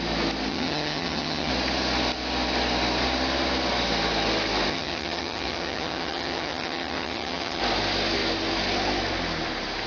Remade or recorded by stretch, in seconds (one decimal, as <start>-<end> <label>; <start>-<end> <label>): 0.0-0.5 recorded; 0.5-1.5 remade; 1.5-4.7 recorded; 4.7-7.6 remade; 7.6-9.9 recorded